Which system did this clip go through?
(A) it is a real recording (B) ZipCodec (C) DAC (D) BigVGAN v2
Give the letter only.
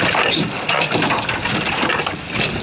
A